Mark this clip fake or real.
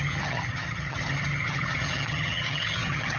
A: fake